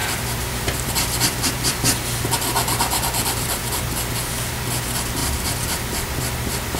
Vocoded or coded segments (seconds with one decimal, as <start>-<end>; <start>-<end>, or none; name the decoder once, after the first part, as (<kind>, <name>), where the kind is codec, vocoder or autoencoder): 0.0-4.1 (vocoder, BigVGAN v2); 5.2-6.8